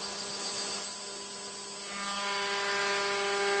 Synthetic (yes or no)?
no